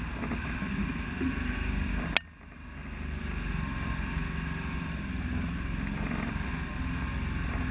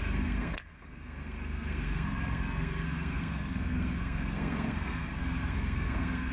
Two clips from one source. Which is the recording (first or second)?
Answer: first